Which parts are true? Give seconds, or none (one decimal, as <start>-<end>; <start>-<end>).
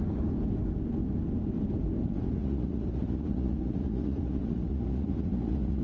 0.0-2.0